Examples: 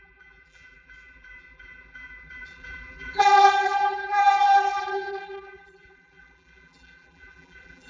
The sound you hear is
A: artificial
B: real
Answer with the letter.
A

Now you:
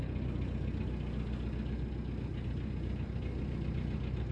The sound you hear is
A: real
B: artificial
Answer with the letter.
A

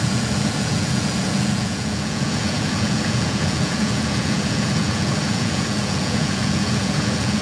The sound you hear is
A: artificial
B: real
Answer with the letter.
A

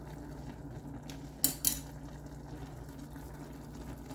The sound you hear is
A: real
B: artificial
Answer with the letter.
A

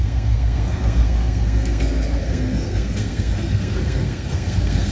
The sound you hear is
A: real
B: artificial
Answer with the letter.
B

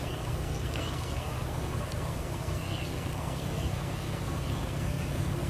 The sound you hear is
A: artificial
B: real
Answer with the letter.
A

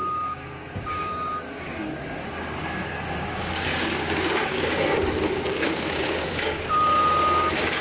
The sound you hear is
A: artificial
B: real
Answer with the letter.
A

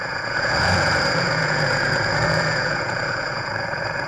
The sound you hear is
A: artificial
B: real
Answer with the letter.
A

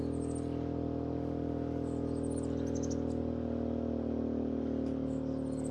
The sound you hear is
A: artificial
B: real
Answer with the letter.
B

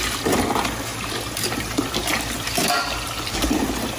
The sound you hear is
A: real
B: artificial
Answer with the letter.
A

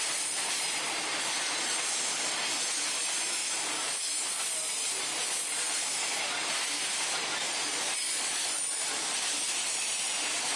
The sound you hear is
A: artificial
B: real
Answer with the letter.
B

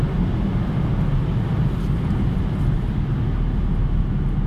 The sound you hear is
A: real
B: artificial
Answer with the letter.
A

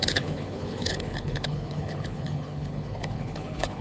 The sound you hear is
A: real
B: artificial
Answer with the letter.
B